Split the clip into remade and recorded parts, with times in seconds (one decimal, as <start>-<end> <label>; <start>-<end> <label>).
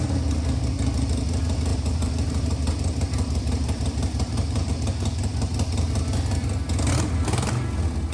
0.0-1.7 recorded; 1.7-4.7 remade; 4.7-8.1 recorded